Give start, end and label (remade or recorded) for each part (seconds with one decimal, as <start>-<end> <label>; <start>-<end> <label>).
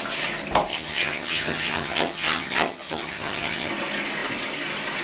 0.0-0.7 recorded; 0.7-3.7 remade; 3.7-5.0 recorded